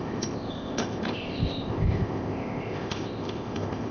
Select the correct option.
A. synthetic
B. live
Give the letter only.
A